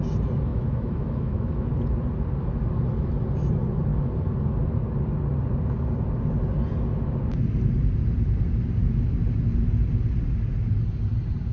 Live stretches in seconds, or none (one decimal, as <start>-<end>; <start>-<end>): 0.0-0.5; 1.7-11.5